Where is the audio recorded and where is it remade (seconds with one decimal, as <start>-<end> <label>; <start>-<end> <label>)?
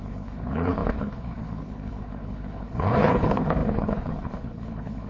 0.0-5.1 remade